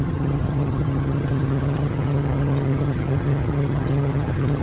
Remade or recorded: remade